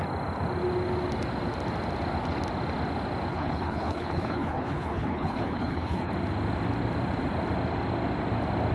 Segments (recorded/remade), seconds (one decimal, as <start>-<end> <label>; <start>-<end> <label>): 0.0-3.3 recorded; 3.3-6.1 remade; 6.1-8.7 recorded